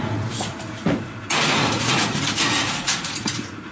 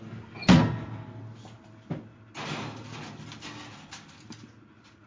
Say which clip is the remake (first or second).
first